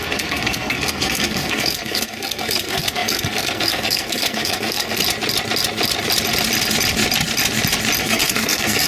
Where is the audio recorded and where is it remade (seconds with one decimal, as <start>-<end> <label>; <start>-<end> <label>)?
0.0-5.0 remade; 5.0-8.0 recorded; 8.0-8.9 remade